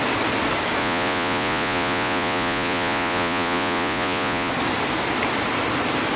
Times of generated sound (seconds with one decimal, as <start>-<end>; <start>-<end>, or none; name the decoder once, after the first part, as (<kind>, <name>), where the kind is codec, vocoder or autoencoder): 0.8-4.5 (vocoder, Vocos)